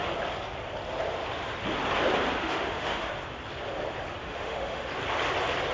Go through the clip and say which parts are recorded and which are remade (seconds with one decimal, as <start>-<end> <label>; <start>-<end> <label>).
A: 0.0-2.4 recorded; 2.4-3.1 remade; 3.1-4.2 recorded; 4.2-4.9 remade; 4.9-5.7 recorded